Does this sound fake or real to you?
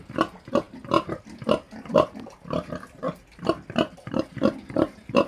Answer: real